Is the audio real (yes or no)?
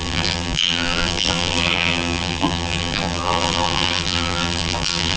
no